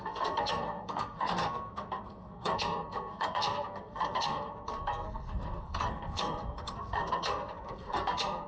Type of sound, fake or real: fake